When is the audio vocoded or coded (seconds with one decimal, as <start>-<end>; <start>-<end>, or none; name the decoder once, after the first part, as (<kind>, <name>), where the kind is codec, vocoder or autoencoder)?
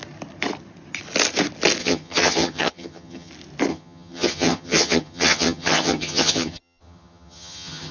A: 1.8-3.3 (vocoder, HiFi-GAN); 3.7-7.9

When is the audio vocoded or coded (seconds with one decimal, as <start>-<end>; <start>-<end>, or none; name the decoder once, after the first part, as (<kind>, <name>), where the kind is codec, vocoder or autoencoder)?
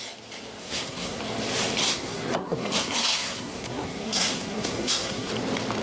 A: 0.6-1.2 (codec, SNAC); 1.8-5.3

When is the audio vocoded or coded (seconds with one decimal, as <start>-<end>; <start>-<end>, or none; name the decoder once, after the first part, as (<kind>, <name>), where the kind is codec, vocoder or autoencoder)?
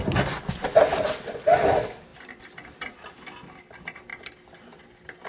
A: none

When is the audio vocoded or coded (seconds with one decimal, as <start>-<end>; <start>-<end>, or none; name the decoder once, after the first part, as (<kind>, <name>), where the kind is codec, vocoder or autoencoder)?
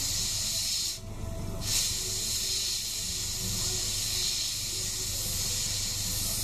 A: none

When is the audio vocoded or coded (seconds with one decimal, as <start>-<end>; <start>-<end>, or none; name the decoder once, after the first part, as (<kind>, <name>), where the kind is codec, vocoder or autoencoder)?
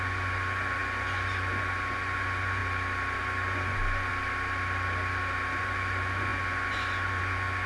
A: 0.0-2.6 (vocoder, Vocos); 3.2-4.1; 5.6-7.7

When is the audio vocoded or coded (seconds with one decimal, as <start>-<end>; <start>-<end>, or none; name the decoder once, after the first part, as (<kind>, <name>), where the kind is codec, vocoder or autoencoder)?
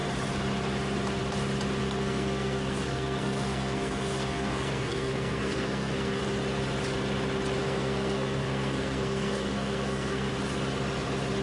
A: 1.8-6.2 (codec, SNAC); 7.6-10.3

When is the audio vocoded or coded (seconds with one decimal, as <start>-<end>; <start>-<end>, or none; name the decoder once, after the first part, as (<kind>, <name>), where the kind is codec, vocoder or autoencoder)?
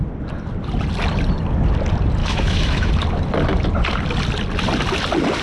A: 2.2-2.9 (autoencoder, DAC-VAE)